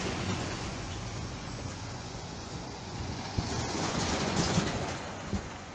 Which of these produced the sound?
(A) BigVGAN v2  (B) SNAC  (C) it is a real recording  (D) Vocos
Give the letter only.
D